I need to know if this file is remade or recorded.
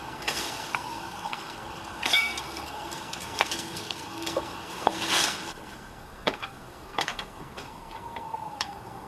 remade